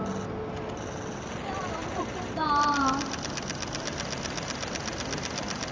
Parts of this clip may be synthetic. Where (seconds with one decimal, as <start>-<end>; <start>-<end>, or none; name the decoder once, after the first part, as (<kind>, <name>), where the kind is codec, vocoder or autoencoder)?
none